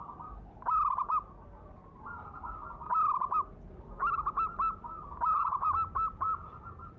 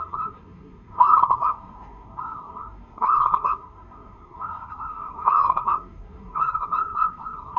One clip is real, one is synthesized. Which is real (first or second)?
first